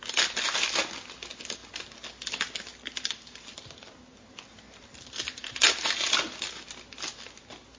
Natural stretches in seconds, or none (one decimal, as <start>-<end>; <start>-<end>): 0.0-7.8